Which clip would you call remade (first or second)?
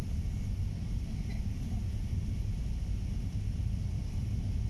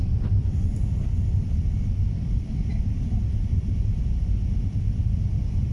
second